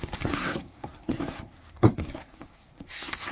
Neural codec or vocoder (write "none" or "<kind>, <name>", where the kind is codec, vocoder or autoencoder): codec, SNAC